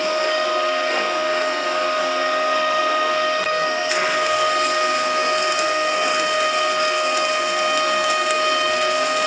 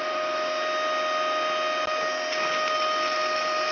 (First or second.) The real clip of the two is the second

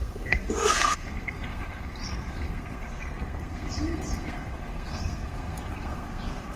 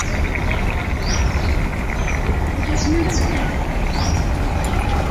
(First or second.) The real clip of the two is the second